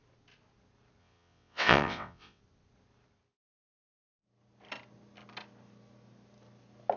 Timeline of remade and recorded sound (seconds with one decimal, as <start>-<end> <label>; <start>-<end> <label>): 0.0-1.0 recorded; 1.0-2.4 remade; 2.4-7.0 recorded